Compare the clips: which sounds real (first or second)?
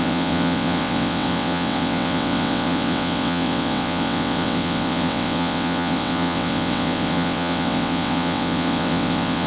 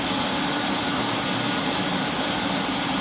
second